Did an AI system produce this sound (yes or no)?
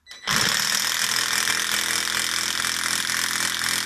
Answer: no